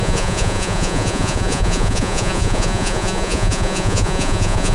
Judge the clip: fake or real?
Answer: fake